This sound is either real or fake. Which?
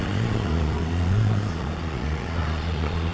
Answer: fake